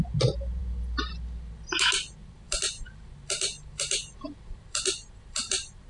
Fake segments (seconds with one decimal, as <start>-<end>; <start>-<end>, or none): 2.2-5.9